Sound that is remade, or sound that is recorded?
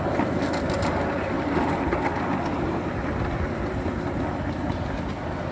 recorded